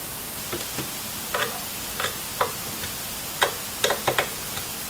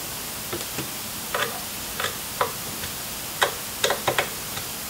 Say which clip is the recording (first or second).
second